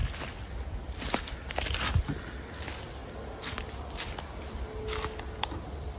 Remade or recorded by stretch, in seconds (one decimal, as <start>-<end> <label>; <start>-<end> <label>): 0.0-6.0 recorded